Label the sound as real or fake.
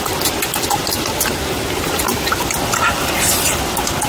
real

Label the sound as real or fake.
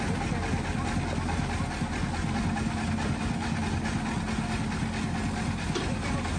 real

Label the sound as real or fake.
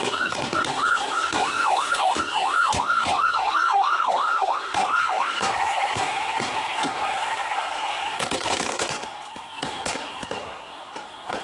fake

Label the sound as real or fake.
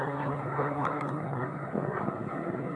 fake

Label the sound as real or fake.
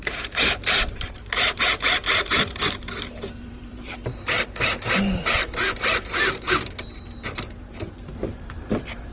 fake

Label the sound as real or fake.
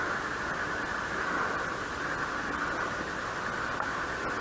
real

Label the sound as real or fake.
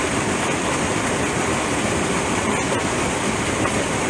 real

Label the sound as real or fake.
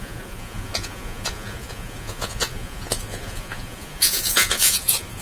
fake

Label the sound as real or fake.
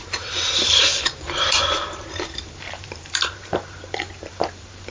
fake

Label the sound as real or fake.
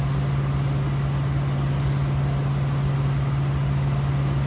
real